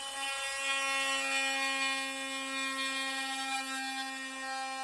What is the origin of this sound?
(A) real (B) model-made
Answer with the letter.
A